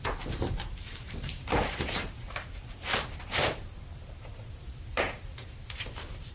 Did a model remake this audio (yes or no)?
yes